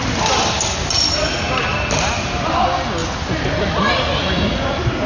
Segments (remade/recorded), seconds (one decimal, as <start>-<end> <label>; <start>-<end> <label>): 0.0-5.1 recorded